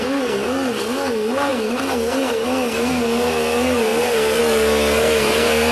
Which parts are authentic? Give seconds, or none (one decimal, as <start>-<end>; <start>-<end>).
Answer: none